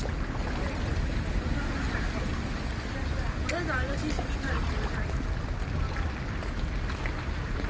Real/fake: real